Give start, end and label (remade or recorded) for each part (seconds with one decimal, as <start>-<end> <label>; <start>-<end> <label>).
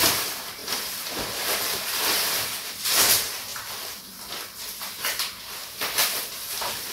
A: 0.0-5.6 remade; 5.6-6.3 recorded; 6.3-6.9 remade